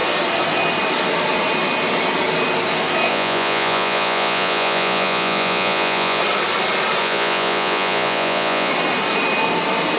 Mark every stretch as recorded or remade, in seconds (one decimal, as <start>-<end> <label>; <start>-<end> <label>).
0.0-3.1 recorded; 3.1-6.2 remade; 6.2-7.0 recorded; 7.0-8.7 remade; 8.7-10.0 recorded